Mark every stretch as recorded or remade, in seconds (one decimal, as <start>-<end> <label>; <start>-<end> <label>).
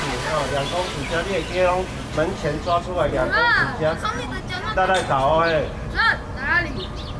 0.0-7.2 recorded